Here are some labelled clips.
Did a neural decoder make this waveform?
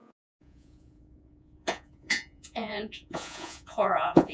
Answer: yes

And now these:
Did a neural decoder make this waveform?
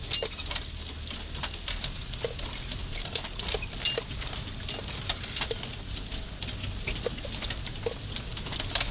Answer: no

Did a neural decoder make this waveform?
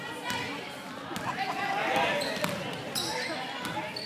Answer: no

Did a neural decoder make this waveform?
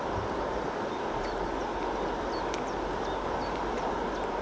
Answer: no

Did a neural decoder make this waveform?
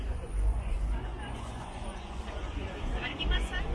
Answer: yes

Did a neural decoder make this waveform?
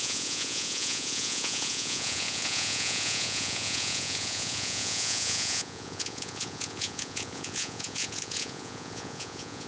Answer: yes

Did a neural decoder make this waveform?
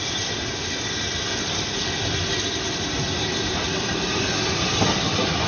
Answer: no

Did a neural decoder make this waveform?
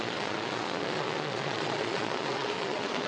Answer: yes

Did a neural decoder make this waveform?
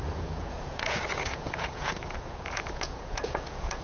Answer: yes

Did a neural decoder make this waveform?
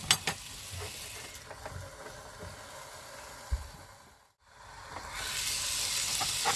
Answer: no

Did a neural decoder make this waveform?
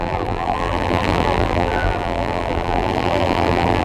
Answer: yes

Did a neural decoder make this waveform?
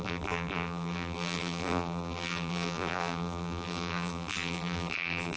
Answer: yes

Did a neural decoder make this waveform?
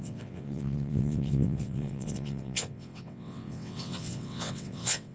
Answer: yes